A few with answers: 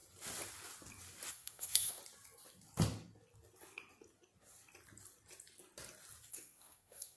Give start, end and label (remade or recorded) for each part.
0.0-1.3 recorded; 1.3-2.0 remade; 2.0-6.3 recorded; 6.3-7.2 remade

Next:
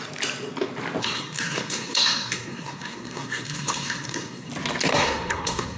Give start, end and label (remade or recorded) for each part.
0.0-1.0 recorded; 1.0-4.5 remade; 4.5-4.9 recorded; 4.9-5.8 remade

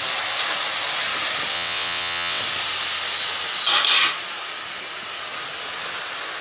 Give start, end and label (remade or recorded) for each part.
0.0-1.5 recorded; 1.5-2.4 remade; 2.4-6.4 recorded